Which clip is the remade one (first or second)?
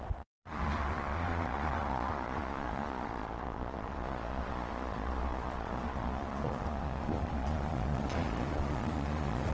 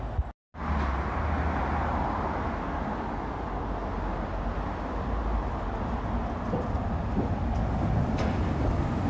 first